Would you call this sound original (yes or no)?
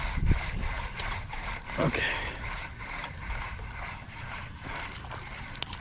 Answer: yes